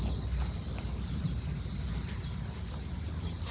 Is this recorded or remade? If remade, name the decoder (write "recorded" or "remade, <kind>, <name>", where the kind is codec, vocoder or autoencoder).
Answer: recorded